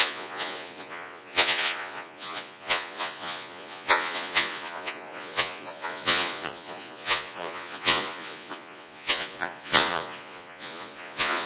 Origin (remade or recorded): remade